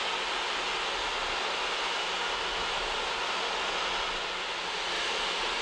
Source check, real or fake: real